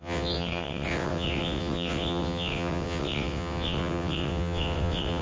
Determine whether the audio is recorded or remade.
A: remade